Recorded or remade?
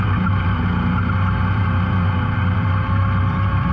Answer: recorded